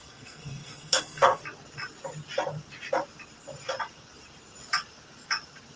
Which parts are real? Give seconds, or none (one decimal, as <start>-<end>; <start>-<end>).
1.4-5.8